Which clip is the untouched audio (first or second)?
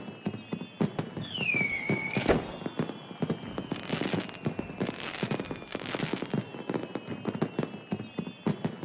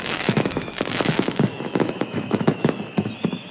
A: first